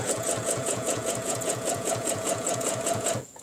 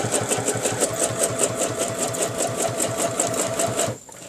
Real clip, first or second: second